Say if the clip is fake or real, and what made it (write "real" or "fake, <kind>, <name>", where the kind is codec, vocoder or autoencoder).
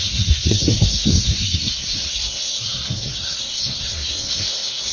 fake, codec, SNAC